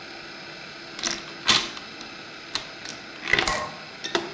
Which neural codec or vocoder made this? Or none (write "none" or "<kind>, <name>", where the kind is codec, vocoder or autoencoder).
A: none